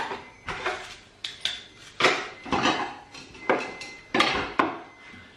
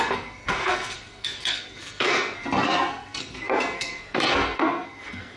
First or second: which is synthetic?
second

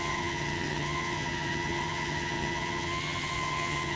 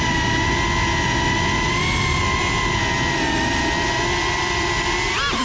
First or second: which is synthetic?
first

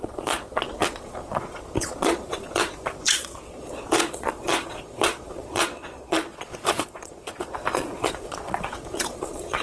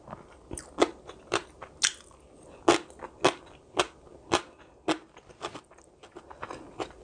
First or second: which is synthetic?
first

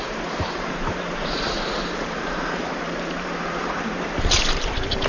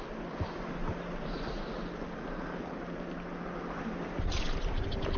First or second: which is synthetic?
first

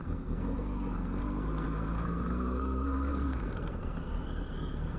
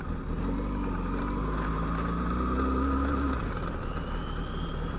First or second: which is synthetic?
first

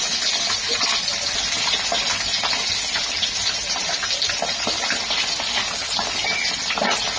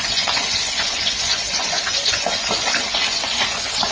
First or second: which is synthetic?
second